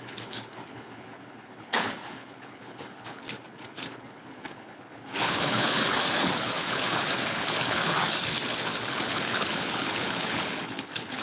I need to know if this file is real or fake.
fake